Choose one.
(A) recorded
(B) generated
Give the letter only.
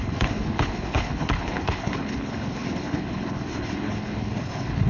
B